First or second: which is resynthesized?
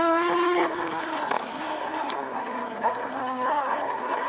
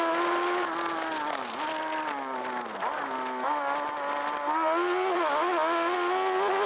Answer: first